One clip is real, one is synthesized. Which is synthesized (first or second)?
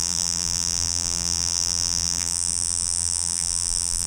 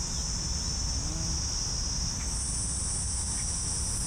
first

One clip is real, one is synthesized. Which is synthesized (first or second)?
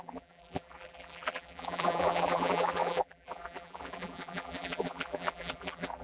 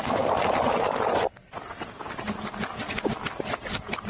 first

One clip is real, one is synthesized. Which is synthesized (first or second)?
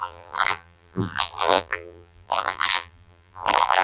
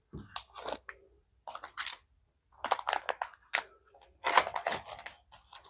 first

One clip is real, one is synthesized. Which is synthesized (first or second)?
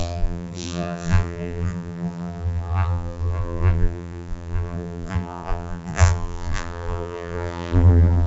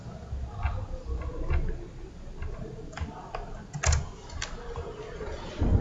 first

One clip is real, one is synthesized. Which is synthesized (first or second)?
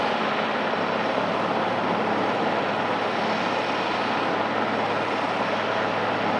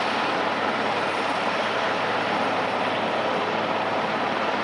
second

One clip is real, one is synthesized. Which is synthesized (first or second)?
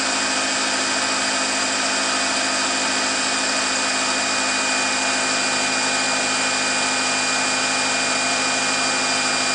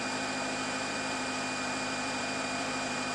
second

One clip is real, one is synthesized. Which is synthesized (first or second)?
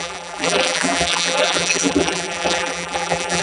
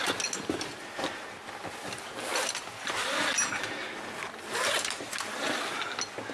first